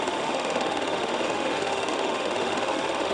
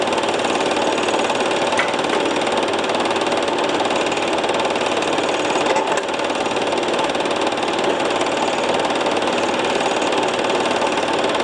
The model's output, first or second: first